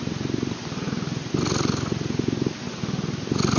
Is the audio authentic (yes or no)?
yes